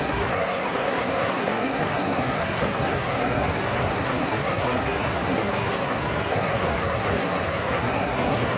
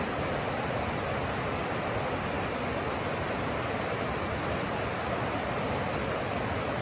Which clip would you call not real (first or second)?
first